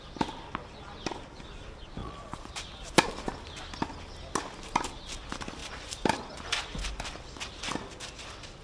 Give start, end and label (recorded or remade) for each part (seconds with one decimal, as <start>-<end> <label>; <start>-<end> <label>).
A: 0.0-2.0 recorded; 2.0-2.5 remade; 2.5-8.6 recorded

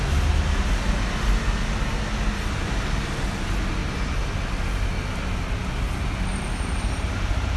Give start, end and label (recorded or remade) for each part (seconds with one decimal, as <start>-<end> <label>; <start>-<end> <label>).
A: 0.0-6.3 recorded; 6.3-7.6 remade

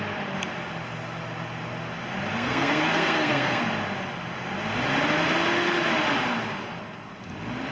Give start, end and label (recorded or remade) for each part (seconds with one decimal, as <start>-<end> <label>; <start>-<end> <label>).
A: 0.0-2.3 recorded; 2.3-3.7 remade; 3.7-7.7 recorded

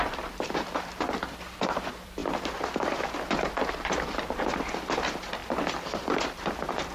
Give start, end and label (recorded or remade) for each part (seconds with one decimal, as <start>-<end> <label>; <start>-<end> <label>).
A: 0.0-2.2 remade; 2.2-4.0 recorded; 4.0-6.9 remade

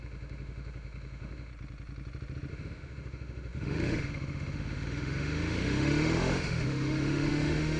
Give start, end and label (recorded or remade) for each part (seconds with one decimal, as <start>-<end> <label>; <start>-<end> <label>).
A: 0.0-1.5 remade; 1.5-2.5 recorded; 2.5-7.8 remade